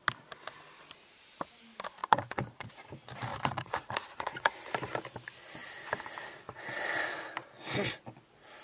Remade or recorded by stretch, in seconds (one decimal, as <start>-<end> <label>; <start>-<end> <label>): 0.0-2.0 recorded; 2.0-2.7 remade; 2.7-3.3 recorded; 3.3-4.5 remade; 4.5-8.6 recorded